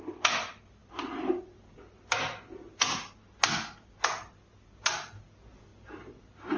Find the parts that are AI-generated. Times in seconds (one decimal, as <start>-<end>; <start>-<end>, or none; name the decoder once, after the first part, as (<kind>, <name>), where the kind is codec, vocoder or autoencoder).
none